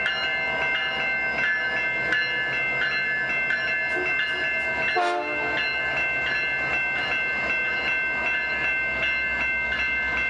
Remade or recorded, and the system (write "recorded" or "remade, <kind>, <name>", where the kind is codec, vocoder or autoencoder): recorded